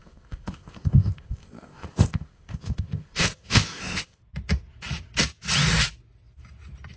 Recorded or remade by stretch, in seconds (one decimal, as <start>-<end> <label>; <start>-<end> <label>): 0.0-4.2 remade; 4.2-7.0 recorded